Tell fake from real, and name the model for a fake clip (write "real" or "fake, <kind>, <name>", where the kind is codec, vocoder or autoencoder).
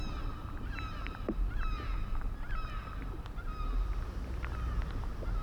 real